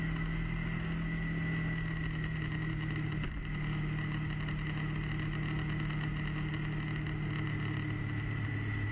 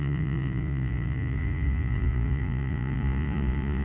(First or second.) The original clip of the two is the first